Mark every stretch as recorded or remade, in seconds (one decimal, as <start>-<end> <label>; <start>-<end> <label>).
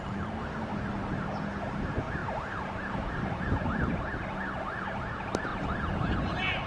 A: 0.0-2.2 recorded; 2.2-3.1 remade; 3.1-5.5 recorded; 5.5-6.2 remade; 6.2-6.7 recorded